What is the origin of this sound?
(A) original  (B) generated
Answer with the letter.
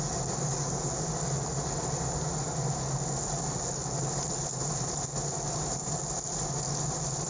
A